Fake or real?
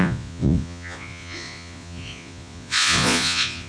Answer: fake